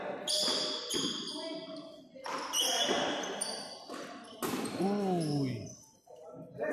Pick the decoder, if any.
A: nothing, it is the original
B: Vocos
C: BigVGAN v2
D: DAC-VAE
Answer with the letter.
A